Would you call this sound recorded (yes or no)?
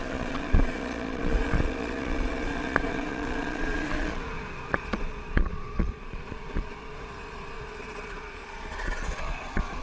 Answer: no